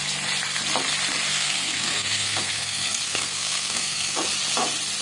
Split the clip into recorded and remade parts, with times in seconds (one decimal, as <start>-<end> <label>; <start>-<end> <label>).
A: 0.0-1.3 recorded; 1.3-4.3 remade; 4.3-5.0 recorded